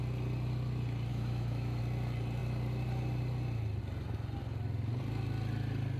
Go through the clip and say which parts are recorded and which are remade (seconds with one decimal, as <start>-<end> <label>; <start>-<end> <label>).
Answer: 0.0-1.1 recorded; 1.1-1.8 remade; 1.8-6.0 recorded